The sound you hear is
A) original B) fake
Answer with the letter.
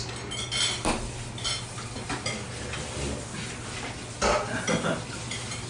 A